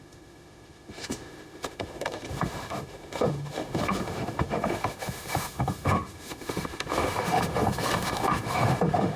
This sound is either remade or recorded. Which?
remade